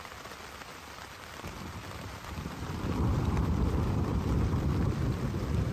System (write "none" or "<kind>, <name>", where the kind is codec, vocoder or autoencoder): vocoder, BigVGAN v2